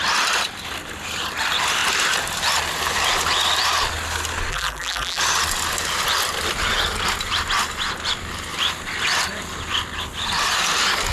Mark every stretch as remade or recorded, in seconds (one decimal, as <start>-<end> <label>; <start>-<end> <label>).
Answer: 0.0-4.5 recorded; 4.5-5.2 remade; 5.2-11.1 recorded